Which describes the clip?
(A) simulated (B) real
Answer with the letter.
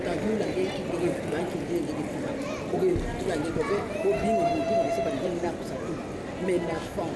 B